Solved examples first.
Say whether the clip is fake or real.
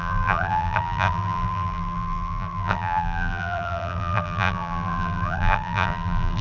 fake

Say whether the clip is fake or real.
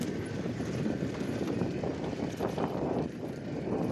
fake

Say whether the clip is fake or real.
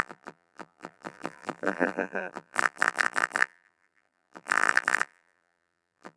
fake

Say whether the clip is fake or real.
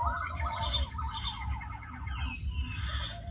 real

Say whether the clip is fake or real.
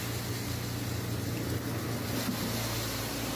real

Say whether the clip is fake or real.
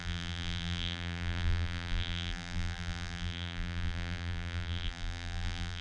fake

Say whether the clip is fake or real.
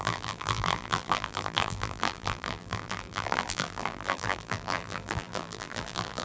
fake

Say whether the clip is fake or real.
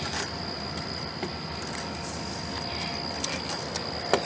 real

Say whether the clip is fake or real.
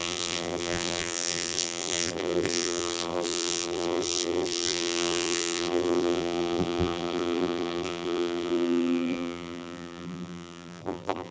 fake